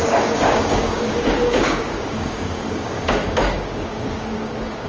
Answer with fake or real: fake